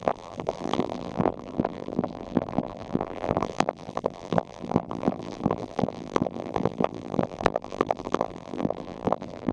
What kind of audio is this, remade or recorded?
remade